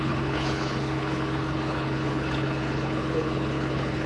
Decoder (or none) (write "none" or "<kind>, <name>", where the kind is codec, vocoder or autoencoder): codec, HILCodec